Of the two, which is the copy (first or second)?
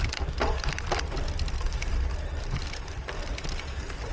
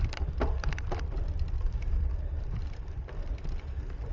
second